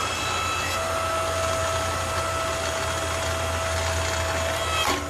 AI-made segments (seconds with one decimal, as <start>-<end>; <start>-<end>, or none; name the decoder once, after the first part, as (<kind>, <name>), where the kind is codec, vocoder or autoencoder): none